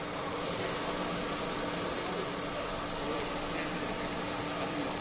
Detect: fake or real real